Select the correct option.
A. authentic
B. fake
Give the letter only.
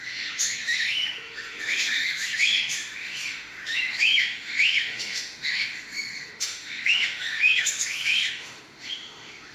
B